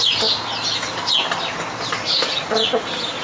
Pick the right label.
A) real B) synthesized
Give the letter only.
A